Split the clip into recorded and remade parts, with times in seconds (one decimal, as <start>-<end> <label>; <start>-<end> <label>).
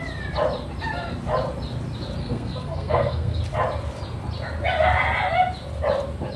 0.0-2.2 recorded; 2.2-3.4 remade; 3.4-6.4 recorded